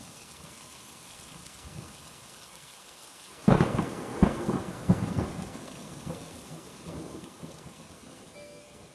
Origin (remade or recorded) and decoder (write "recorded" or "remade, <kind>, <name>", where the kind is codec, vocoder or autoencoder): remade, codec, SNAC